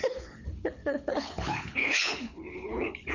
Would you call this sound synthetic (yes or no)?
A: yes